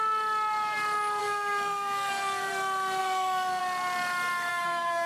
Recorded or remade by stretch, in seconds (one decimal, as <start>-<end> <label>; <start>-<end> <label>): 0.0-1.2 recorded; 1.2-2.5 remade; 2.5-3.0 recorded; 3.0-3.6 remade; 3.6-4.5 recorded; 4.5-5.1 remade